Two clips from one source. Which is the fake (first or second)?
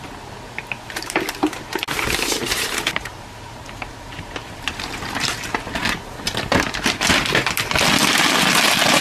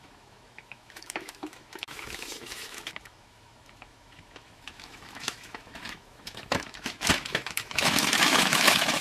second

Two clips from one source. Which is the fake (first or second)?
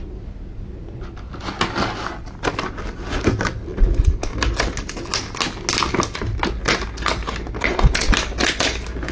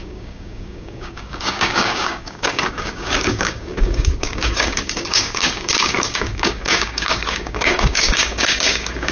second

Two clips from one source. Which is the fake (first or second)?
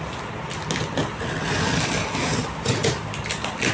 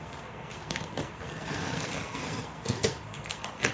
second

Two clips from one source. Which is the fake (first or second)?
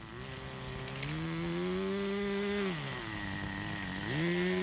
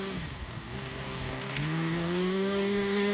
second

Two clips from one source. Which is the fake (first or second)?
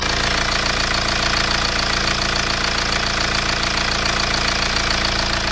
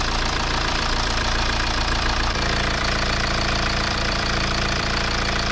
second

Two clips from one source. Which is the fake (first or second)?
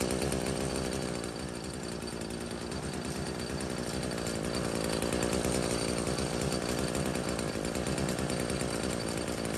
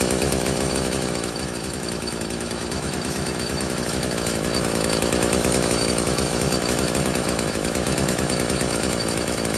second